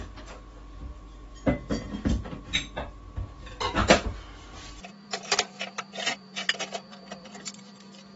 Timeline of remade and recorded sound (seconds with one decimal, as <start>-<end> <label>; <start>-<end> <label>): 0.0-3.8 recorded; 3.8-7.7 remade; 7.7-8.2 recorded